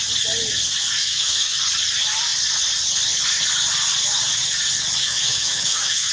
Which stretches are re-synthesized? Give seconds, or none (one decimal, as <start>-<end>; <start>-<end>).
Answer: 1.0-1.6; 5.0-6.1